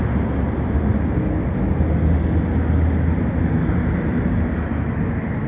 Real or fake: real